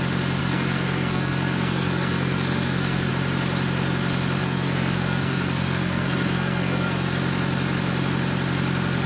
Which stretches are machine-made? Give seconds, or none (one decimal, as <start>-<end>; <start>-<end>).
0.4-3.1; 4.4-7.1